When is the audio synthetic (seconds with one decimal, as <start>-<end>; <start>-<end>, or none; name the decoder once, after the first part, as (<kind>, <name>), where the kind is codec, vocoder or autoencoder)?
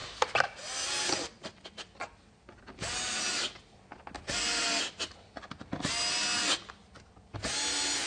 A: none